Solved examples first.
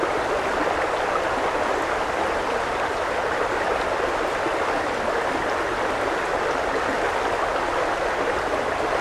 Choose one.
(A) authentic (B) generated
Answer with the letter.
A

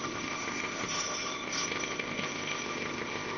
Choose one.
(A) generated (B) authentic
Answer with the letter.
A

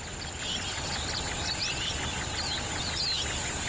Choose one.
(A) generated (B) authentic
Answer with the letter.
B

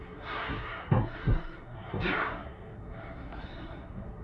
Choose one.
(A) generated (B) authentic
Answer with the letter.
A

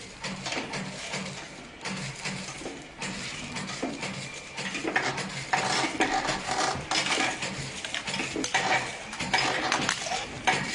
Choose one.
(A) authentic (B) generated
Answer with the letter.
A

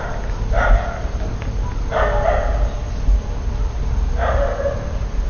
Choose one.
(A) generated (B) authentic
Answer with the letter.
B